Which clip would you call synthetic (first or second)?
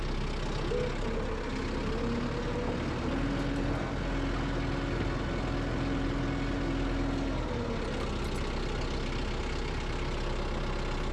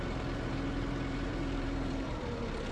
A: second